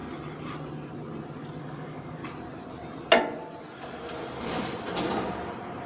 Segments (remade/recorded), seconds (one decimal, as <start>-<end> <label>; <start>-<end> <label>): 0.0-1.6 recorded; 1.6-2.2 remade; 2.2-5.9 recorded